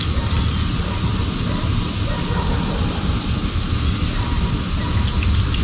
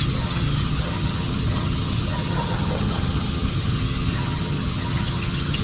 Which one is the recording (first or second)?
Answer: first